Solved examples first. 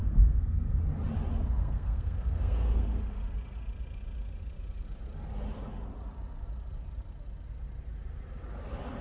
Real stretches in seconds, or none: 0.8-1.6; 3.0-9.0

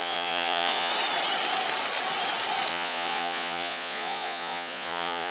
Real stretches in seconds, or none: 0.9-2.7

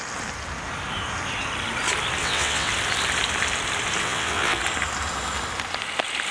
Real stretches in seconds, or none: 0.0-2.2; 2.7-4.0; 4.6-6.3

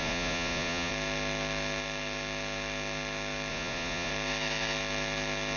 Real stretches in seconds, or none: 0.9-3.5; 4.1-5.6

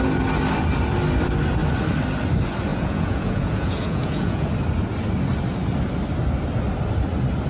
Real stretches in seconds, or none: 0.0-2.7; 4.5-7.5